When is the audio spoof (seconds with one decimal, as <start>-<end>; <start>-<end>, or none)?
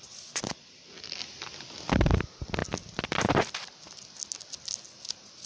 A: none